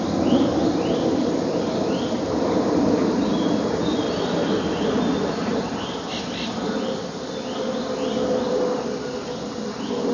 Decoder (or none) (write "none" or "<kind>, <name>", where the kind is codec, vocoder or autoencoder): none